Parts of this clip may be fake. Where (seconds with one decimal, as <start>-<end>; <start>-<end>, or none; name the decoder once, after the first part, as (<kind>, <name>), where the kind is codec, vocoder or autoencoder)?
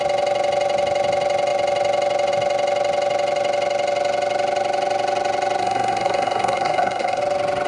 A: 5.6-7.2 (codec, SNAC)